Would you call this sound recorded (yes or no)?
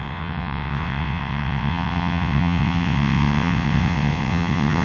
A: no